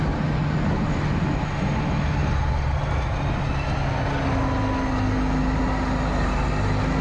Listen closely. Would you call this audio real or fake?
real